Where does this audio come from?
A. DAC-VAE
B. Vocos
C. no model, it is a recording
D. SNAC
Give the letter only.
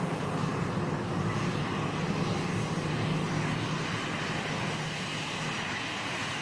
C